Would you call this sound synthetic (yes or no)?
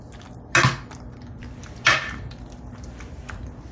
no